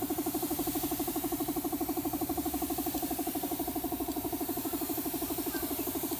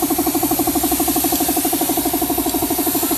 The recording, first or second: second